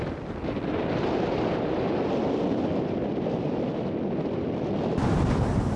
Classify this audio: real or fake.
real